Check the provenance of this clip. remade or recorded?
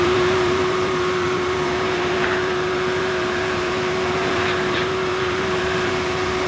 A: remade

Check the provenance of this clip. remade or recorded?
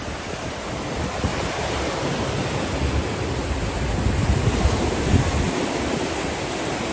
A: recorded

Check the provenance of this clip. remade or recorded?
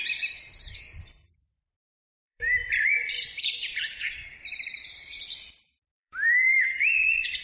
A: remade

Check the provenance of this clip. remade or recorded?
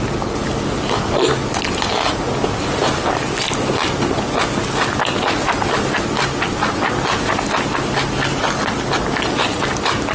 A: recorded